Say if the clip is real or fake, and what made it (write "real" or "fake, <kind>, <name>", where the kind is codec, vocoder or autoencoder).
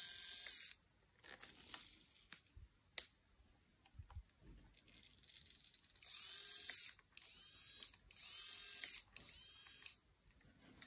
real